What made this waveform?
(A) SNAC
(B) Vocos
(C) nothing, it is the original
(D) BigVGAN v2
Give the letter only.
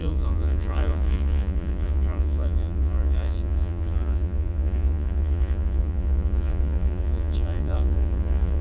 B